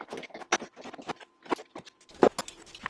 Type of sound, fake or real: real